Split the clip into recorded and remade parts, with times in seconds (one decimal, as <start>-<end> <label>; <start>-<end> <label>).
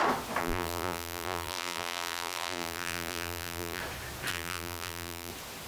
0.0-0.4 recorded; 0.4-3.8 remade; 3.8-4.3 recorded; 4.3-5.3 remade; 5.3-5.7 recorded